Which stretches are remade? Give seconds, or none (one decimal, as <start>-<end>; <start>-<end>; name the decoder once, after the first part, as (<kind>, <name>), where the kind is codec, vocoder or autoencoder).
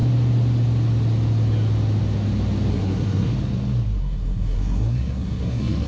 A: 2.7-3.3 (codec, SNAC); 4.0-5.9